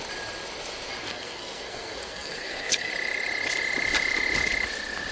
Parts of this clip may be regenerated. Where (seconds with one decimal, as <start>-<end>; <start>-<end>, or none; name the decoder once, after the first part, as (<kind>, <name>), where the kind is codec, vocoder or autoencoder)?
1.0-2.9 (codec, SNAC)

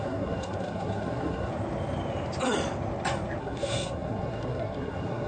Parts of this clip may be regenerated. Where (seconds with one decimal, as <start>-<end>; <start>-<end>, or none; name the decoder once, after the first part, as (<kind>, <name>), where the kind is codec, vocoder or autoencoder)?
0.0-1.5 (codec, SNAC); 3.4-5.3

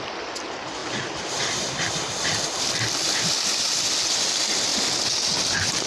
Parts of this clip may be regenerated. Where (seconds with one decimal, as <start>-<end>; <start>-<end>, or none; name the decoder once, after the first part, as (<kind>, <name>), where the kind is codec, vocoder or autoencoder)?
0.8-1.9 (vocoder, BigVGAN v2)